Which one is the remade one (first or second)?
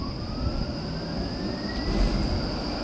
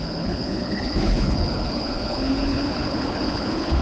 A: second